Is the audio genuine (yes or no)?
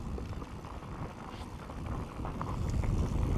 yes